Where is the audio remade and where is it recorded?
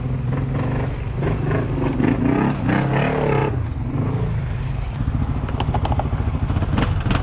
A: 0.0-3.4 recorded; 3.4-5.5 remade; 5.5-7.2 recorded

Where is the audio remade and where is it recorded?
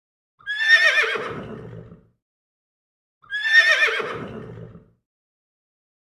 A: 0.0-3.3 recorded; 3.3-4.7 remade; 4.7-6.2 recorded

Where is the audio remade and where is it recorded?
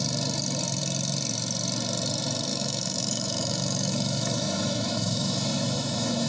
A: 0.0-2.5 recorded; 2.5-6.3 remade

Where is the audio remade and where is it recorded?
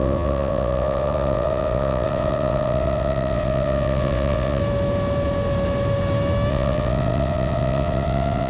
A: 0.0-4.6 remade; 4.6-6.5 recorded; 6.5-8.5 remade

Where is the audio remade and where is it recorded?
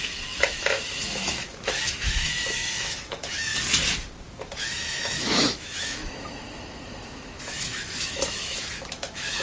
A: 0.0-3.5 remade; 3.5-4.6 recorded; 4.6-9.4 remade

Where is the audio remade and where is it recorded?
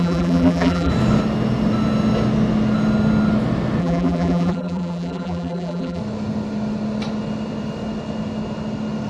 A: 0.0-0.9 remade; 0.9-3.8 recorded; 3.8-6.0 remade; 6.0-9.1 recorded